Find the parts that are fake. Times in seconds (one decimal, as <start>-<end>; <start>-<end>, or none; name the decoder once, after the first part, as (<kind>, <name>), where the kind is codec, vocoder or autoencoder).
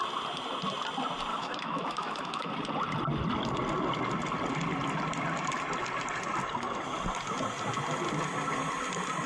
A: 1.3-2.5 (autoencoder, DAC-VAE)